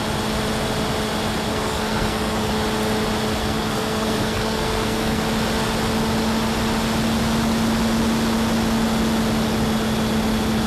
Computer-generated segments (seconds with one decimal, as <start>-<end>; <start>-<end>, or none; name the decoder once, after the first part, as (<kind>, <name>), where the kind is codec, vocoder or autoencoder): 1.5-2.5 (codec, SNAC); 3.4-5.2